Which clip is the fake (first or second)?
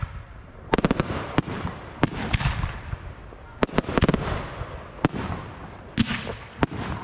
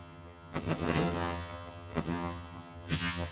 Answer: second